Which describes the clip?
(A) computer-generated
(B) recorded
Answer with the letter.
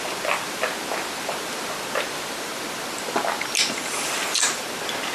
A